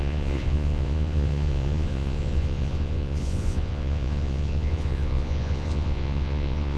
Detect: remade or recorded remade